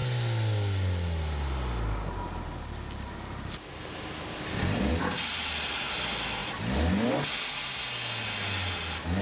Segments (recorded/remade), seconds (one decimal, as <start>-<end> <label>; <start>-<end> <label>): 0.0-9.2 recorded